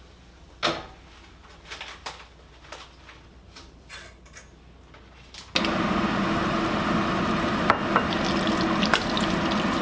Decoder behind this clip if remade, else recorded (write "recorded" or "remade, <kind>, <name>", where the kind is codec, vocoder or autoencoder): recorded